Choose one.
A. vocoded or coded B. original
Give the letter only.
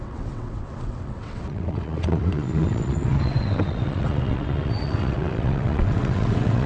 A